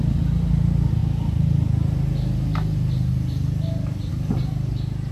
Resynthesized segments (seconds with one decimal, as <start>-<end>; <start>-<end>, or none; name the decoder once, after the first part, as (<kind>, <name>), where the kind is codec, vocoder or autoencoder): none